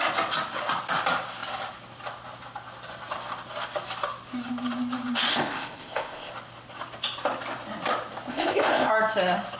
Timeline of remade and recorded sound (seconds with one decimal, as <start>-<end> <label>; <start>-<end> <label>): 0.0-5.3 recorded; 5.3-6.3 remade; 6.3-8.3 recorded; 8.3-8.9 remade; 8.9-9.6 recorded